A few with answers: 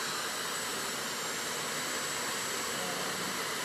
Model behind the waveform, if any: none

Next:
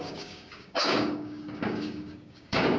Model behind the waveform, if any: codec, DAC